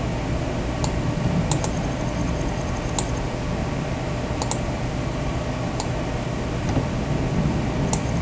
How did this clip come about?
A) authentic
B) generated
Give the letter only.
A